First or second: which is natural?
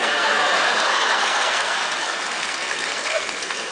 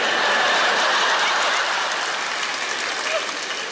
second